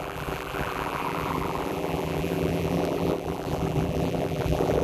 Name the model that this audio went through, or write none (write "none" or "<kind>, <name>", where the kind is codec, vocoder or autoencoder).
vocoder, BigVGAN v2